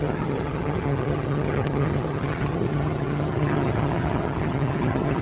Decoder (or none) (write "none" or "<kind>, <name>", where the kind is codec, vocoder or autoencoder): vocoder, HiFi-GAN